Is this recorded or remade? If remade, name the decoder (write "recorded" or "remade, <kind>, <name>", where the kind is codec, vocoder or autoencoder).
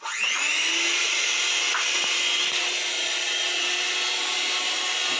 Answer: recorded